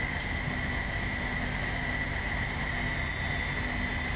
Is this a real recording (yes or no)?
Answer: yes